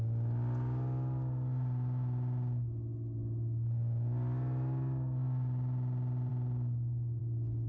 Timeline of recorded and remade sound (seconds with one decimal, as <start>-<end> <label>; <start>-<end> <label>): 0.0-7.7 recorded

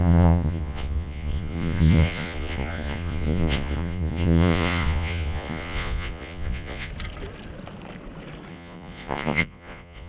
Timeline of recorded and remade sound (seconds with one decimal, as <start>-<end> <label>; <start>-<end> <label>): 0.0-6.9 remade; 6.9-8.5 recorded; 8.5-10.1 remade

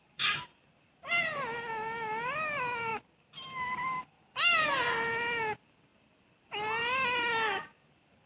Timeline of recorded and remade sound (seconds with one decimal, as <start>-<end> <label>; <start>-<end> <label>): 0.0-2.9 remade; 2.9-4.0 recorded; 4.0-5.9 remade; 5.9-6.8 recorded; 6.8-8.3 remade

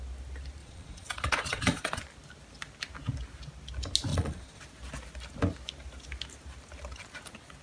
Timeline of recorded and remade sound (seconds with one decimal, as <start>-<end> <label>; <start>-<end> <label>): 0.0-0.6 recorded; 0.6-2.0 remade; 2.0-4.1 recorded; 4.1-4.6 remade; 4.6-7.6 recorded